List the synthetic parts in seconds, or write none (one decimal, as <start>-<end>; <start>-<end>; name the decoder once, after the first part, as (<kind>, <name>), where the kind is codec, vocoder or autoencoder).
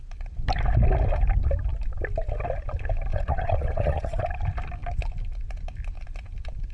3.1-4.2 (vocoder, Vocos)